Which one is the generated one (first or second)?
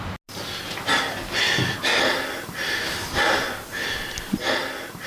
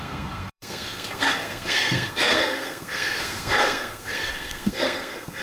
second